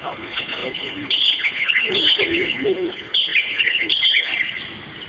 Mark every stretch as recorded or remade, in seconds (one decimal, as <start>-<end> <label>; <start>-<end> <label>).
0.0-4.3 remade; 4.3-5.1 recorded